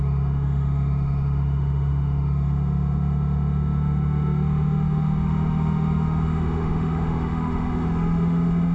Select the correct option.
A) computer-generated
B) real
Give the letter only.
A